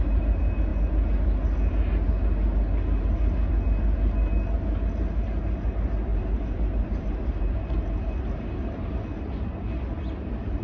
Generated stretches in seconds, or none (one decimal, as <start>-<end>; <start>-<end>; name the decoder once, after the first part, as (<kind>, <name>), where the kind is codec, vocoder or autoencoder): 6.1-7.6 (vocoder, BigVGAN v2)